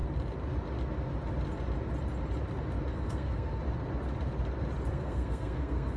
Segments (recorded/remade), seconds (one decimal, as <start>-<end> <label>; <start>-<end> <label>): 0.0-2.9 recorded; 2.9-3.6 remade; 3.6-4.9 recorded; 4.9-6.0 remade